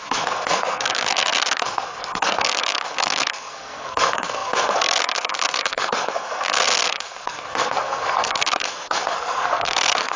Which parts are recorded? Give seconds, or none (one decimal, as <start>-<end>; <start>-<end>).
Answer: none